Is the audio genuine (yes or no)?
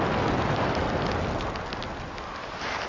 yes